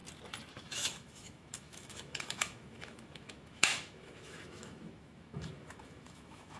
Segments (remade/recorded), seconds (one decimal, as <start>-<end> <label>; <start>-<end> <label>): 0.0-0.6 recorded; 0.6-6.6 remade